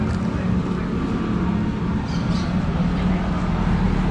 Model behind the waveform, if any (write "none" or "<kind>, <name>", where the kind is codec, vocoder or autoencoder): none